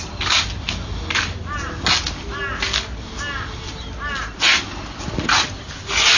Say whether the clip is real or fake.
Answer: real